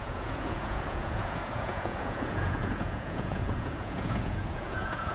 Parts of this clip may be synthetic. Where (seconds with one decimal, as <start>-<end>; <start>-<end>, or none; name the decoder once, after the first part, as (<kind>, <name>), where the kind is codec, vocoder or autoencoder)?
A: 0.0-5.1 (vocoder, Vocos)